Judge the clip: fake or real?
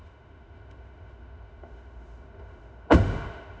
fake